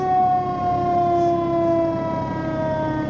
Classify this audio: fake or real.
real